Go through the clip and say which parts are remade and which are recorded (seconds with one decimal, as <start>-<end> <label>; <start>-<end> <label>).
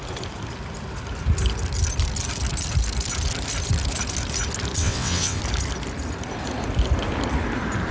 0.0-4.8 recorded; 4.8-5.4 remade; 5.4-7.9 recorded